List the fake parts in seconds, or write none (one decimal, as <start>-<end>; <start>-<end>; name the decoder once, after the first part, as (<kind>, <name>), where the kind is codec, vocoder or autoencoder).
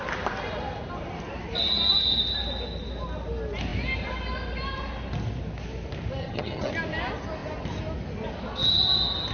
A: 6.2-6.7 (vocoder, HiFi-GAN)